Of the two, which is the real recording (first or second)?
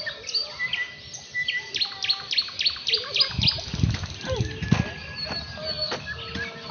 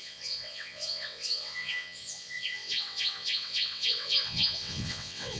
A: first